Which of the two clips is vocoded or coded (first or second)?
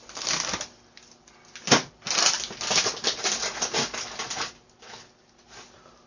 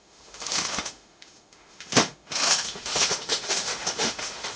second